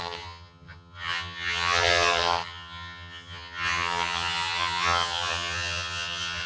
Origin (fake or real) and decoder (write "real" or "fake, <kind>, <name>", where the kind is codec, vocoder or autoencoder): fake, vocoder, HiFi-GAN